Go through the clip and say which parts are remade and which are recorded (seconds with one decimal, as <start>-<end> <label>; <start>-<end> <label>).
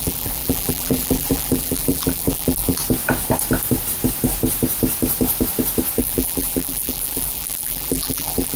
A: 0.0-2.8 remade; 2.8-6.0 recorded; 6.0-8.6 remade